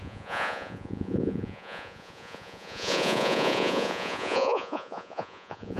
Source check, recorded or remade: remade